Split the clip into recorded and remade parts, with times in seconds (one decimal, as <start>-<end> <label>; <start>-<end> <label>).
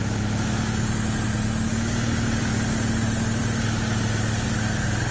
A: 0.0-5.1 recorded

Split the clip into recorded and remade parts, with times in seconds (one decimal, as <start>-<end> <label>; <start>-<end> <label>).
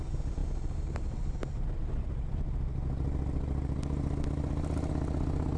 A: 0.0-5.6 recorded